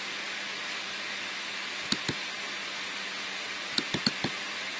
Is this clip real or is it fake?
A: real